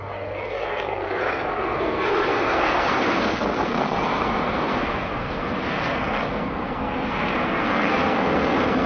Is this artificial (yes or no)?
yes